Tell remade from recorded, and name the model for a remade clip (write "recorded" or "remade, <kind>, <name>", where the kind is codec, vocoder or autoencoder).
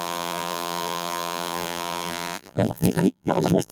remade, vocoder, BigVGAN v2